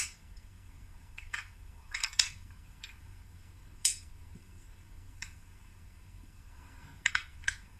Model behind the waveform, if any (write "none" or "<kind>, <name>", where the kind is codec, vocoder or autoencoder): codec, SNAC